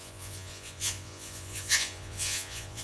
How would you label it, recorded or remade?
remade